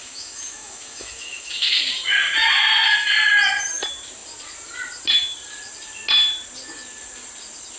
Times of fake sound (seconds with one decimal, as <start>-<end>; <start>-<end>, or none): 0.0-1.8